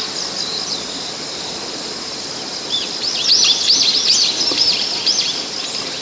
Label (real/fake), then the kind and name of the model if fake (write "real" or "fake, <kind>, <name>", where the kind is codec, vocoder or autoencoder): real